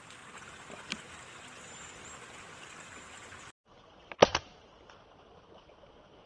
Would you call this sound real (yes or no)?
yes